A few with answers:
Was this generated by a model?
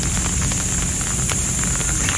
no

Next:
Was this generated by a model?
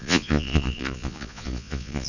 yes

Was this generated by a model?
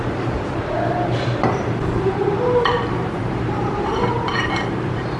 yes